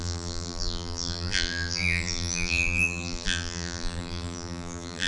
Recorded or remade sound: remade